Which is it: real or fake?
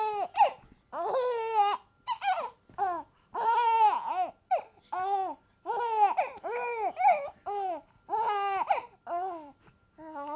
real